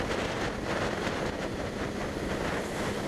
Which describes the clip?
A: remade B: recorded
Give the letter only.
B